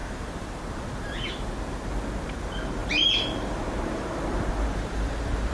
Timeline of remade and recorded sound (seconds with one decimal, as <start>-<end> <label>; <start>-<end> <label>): 0.0-1.3 remade; 1.3-2.8 recorded; 2.8-5.5 remade